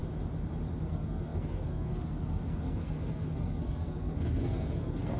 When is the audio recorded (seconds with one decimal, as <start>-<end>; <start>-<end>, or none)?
0.0-0.8